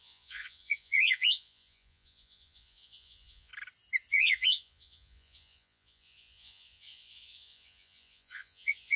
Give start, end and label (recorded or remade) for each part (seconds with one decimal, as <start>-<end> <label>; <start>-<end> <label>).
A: 0.0-3.5 remade; 3.5-4.1 recorded; 4.1-9.0 remade